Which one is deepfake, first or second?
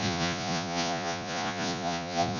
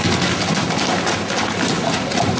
first